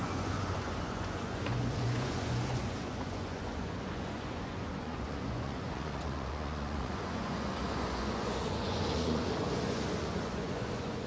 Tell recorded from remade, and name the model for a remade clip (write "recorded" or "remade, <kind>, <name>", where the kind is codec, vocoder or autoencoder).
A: remade, vocoder, Vocos